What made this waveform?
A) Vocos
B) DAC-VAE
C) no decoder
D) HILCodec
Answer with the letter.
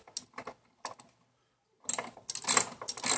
C